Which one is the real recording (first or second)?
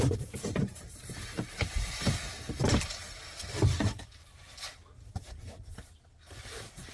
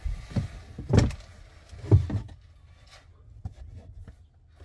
second